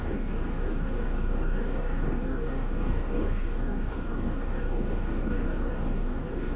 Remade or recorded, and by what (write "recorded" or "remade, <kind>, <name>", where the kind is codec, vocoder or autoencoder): remade, codec, DAC